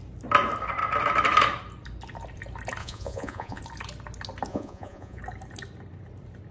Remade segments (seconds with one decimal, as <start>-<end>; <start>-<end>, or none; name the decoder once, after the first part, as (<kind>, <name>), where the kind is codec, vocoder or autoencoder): 2.8-3.6 (vocoder, Vocos); 4.5-5.2